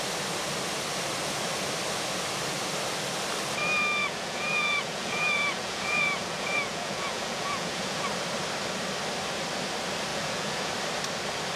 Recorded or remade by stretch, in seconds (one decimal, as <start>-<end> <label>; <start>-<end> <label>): 0.0-4.0 recorded; 4.0-8.0 remade; 8.0-10.1 recorded; 10.1-10.7 remade; 10.7-11.6 recorded